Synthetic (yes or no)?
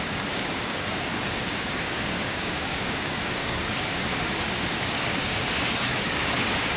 yes